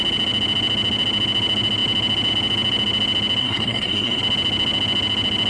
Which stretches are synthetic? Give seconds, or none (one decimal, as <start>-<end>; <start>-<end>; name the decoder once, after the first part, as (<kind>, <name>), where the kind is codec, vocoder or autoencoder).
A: 3.4-4.2 (codec, SNAC)